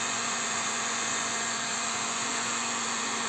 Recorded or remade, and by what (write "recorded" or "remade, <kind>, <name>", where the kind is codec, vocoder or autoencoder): remade, vocoder, Vocos